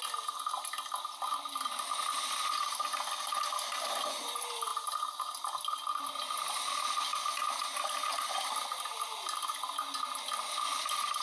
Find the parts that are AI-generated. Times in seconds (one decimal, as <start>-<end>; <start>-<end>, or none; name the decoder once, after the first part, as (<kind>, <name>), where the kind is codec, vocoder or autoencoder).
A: none